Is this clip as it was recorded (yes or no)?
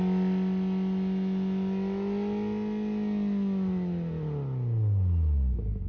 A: yes